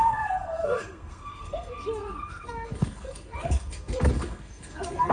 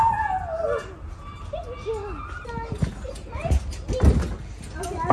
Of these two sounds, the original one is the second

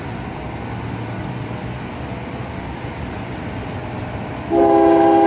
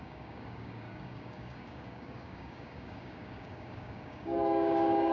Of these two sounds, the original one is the first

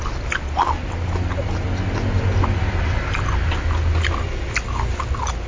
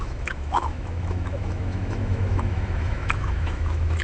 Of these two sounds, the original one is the first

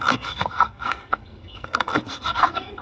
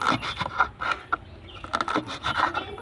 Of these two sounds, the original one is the second